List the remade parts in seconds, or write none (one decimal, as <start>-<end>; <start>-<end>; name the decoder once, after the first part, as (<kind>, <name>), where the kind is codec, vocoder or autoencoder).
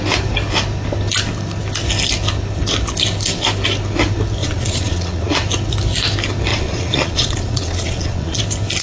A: 4.4-5.2 (vocoder, Vocos); 6.5-8.4